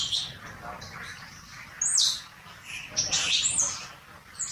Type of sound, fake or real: real